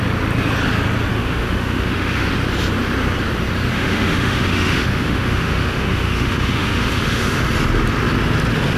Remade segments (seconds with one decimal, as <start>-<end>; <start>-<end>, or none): 1.1-2.3; 3.7-7.4